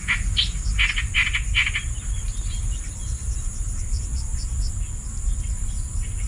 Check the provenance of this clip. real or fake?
real